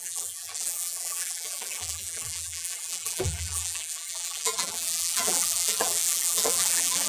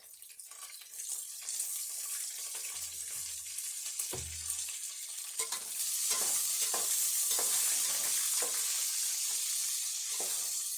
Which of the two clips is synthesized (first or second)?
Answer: first